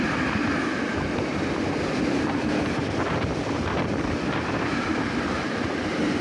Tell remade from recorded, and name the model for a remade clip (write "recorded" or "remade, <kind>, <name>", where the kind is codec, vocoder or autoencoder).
remade, vocoder, BigVGAN v2